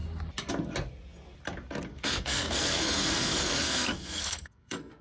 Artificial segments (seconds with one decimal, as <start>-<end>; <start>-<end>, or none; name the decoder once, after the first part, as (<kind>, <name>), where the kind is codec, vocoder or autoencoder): 1.9-5.0 (codec, SNAC)